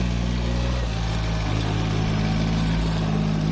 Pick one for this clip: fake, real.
real